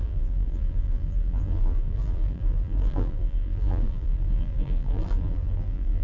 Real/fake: fake